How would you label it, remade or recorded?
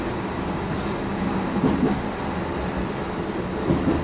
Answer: recorded